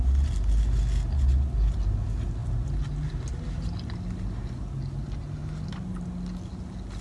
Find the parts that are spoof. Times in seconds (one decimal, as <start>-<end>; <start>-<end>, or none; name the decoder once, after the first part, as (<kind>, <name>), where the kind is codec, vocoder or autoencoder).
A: none